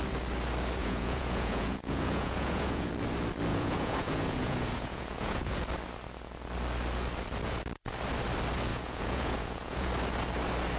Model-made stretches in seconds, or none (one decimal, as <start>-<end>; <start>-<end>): 0.8-2.9; 3.5-5.6; 8.7-9.9